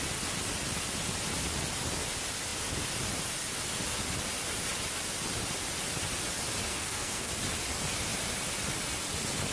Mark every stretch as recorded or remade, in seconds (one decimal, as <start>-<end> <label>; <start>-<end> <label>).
0.0-6.7 recorded; 6.7-7.3 remade; 7.3-9.5 recorded